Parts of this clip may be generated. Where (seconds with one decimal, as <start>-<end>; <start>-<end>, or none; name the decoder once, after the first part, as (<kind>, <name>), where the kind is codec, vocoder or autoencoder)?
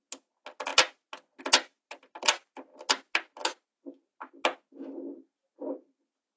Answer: none